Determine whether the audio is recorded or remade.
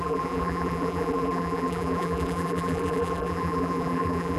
remade